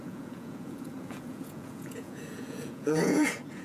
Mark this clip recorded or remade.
remade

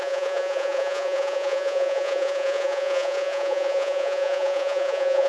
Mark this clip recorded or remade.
remade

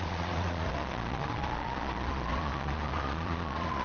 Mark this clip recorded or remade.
remade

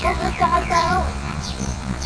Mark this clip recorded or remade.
remade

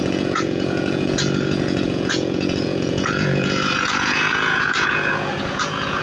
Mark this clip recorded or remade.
remade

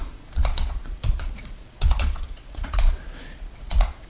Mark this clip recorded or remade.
remade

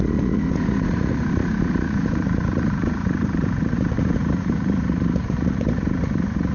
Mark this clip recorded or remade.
remade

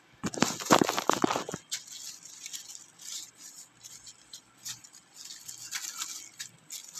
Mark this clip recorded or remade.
recorded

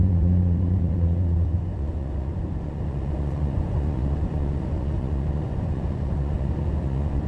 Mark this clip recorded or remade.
remade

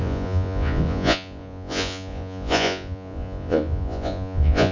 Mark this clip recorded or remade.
remade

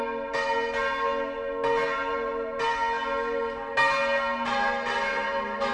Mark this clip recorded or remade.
recorded